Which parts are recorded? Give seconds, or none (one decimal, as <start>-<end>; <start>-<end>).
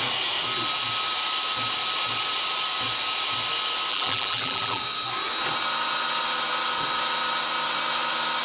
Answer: 0.0-3.9; 4.8-8.4